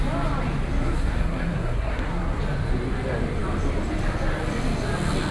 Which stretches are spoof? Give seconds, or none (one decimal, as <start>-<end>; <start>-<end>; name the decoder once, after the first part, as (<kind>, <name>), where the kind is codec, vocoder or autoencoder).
0.8-2.4 (codec, SNAC)